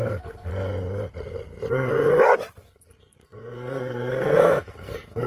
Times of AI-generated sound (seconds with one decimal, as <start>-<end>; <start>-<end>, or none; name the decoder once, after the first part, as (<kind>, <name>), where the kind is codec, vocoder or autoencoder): 0.0-0.5 (codec, SNAC); 1.7-2.1; 2.6-5.3